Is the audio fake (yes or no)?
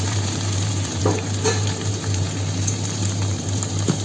yes